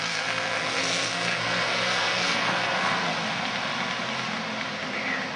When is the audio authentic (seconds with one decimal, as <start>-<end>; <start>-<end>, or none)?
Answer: 3.1-5.4